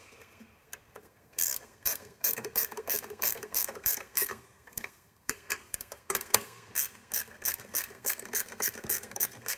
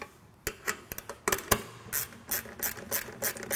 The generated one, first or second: first